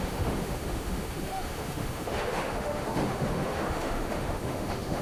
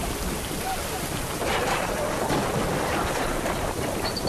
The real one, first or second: second